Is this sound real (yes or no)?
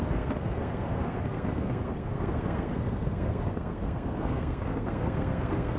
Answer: no